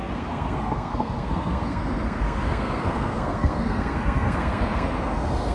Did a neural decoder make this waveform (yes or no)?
yes